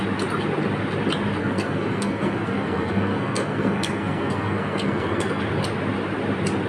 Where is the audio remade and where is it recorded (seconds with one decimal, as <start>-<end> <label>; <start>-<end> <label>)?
0.0-1.4 recorded; 1.4-5.4 remade; 5.4-6.7 recorded